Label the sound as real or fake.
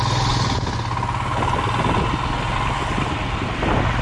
real